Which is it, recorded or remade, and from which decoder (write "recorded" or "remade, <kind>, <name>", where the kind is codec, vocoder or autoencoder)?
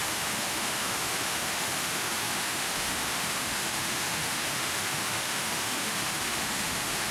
remade, autoencoder, DAC-VAE